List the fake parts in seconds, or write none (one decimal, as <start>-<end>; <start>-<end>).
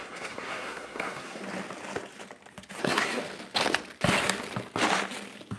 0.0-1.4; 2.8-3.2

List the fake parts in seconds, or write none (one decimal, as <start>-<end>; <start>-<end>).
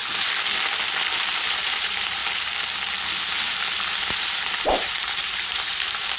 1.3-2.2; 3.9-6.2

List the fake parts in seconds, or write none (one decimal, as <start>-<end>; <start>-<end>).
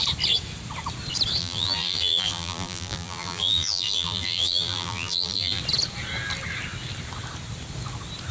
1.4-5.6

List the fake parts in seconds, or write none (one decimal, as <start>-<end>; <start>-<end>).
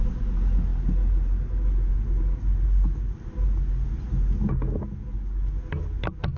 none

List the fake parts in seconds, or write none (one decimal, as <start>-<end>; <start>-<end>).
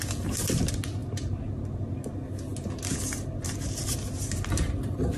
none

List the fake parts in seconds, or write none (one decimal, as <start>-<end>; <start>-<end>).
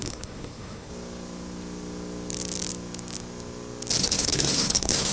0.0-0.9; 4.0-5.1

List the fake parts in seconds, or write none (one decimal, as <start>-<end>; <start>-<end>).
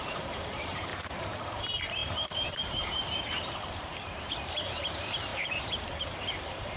0.0-6.8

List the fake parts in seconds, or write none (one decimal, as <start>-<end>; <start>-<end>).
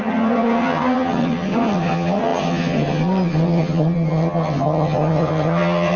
0.0-6.0